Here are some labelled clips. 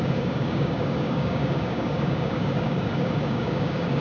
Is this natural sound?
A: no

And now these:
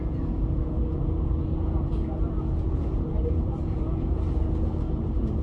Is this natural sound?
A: no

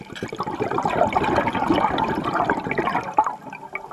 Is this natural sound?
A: yes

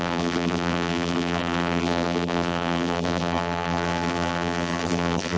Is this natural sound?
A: no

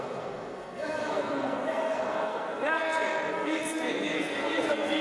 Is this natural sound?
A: no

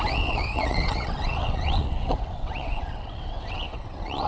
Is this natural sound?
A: no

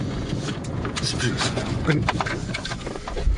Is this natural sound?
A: no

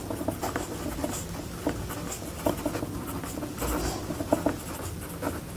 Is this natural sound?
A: yes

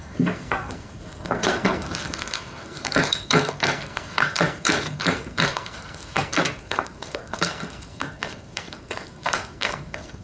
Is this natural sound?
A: no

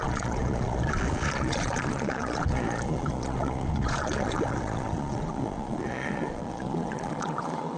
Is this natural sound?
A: no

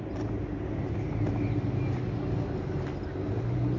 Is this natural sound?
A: yes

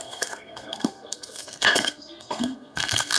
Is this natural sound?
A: no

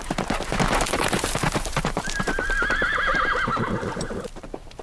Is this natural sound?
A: no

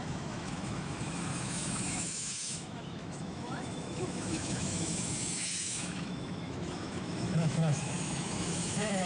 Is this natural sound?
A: no